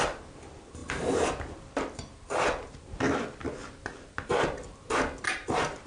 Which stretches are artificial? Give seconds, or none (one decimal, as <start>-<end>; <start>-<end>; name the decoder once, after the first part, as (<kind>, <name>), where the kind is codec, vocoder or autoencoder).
none